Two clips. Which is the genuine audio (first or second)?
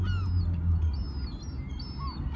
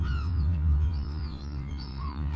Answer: first